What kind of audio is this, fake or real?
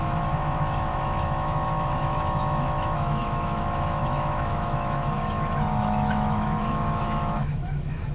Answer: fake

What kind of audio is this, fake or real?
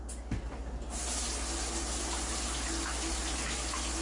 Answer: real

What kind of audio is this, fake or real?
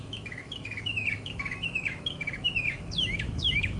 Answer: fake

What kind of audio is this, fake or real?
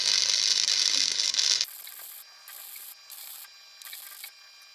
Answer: real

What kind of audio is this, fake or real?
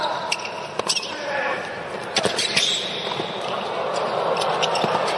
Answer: real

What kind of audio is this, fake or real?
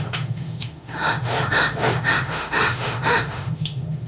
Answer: fake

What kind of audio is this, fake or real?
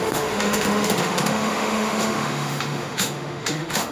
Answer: fake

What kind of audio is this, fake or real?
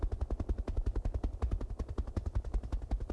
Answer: real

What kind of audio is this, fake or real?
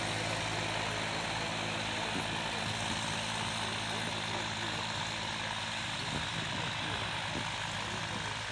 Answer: real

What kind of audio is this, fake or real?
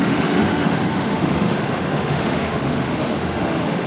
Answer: fake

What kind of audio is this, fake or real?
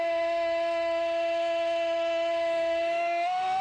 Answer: fake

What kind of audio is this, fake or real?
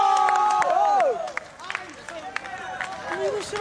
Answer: real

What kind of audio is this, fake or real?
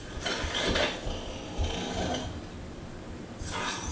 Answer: real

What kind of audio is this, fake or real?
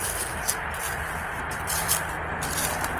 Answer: real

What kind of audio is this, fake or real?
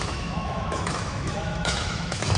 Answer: fake